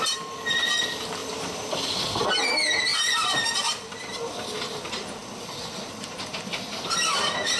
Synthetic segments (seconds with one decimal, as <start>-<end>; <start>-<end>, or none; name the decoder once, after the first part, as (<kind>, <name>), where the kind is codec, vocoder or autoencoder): 1.2-2.4 (vocoder, BigVGAN v2); 2.9-4.3